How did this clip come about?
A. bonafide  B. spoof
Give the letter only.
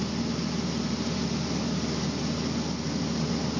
A